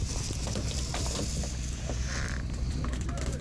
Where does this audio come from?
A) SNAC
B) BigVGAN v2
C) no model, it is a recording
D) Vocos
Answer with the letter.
B